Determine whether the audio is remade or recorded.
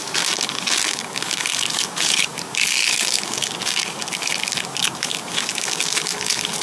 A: remade